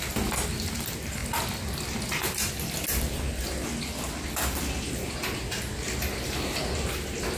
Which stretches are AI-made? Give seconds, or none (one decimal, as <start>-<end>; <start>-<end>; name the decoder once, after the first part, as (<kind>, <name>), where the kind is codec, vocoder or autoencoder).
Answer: none